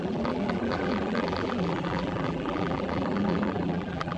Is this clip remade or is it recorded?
remade